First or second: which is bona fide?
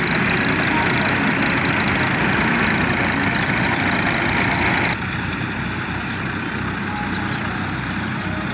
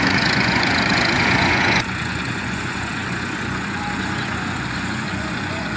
first